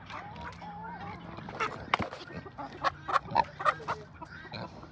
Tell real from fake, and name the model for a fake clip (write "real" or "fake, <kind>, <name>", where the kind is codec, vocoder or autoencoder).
real